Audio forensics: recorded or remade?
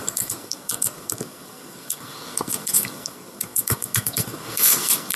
remade